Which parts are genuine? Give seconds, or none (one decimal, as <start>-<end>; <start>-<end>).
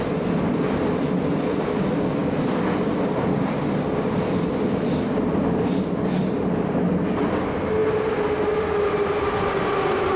0.0-10.2